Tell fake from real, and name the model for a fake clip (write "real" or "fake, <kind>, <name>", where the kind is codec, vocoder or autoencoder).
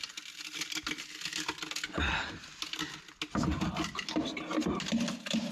real